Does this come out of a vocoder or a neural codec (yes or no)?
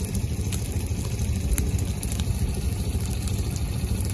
no